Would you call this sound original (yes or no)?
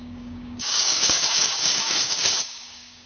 no